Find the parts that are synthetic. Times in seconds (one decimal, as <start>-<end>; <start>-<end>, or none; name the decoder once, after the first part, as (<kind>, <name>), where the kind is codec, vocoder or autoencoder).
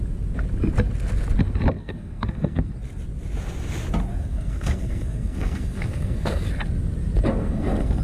1.8-2.7 (codec, SNAC); 4.1-6.5; 7.4-8.0